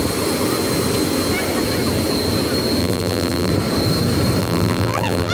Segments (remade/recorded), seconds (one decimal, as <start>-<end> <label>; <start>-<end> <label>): 0.0-2.8 recorded; 2.8-3.5 remade; 3.5-4.4 recorded; 4.4-5.3 remade